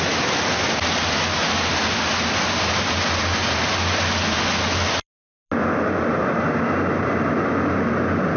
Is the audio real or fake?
real